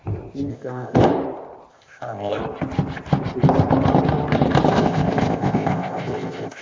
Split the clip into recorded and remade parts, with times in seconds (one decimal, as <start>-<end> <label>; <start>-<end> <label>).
0.0-0.5 recorded; 0.5-1.1 remade; 1.1-1.7 recorded; 1.7-2.4 remade; 2.4-4.7 recorded; 4.7-6.6 remade